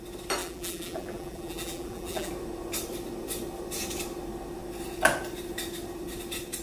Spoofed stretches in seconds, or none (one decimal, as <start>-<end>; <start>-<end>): 0.4-2.3